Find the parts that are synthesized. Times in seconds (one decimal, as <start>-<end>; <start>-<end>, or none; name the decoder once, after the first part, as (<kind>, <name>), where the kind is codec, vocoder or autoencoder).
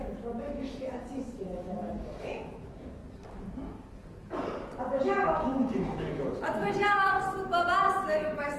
0.0-3.0 (autoencoder, DAC-VAE); 4.8-7.3; 8.0-8.6